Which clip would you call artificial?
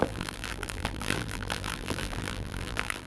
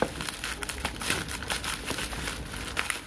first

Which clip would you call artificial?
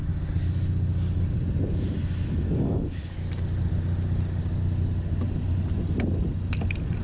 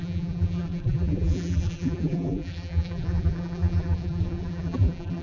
second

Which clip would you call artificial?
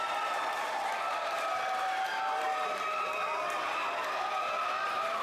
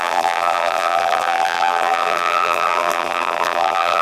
second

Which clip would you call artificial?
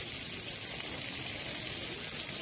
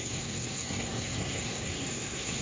second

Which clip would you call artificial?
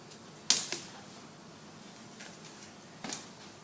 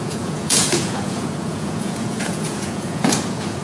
second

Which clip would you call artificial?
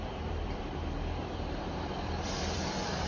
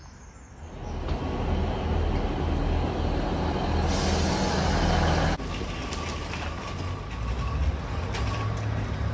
first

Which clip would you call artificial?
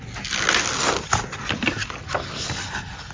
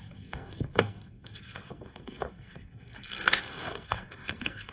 second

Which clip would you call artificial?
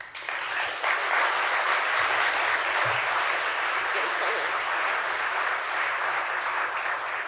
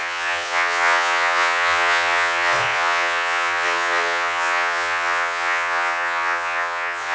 second